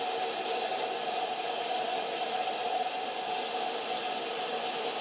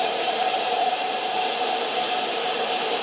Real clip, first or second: first